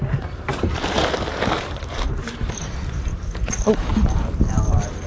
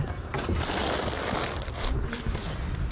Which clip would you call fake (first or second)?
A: first